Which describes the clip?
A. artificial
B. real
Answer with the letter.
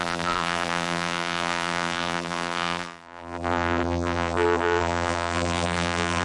A